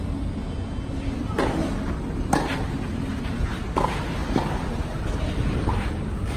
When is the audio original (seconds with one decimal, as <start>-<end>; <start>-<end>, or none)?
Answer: 0.0-4.2; 5.7-6.4